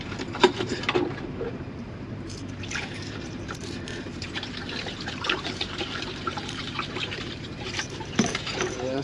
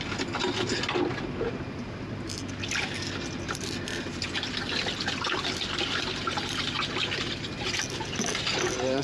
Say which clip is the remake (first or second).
first